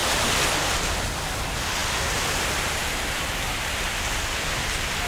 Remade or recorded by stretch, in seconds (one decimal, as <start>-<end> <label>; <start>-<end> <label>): 0.0-5.1 recorded